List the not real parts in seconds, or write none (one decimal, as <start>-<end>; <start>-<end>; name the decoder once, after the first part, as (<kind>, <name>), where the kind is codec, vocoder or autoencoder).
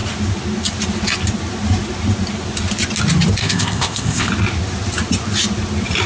3.4-4.3 (codec, ZipCodec)